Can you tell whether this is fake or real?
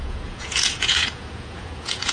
fake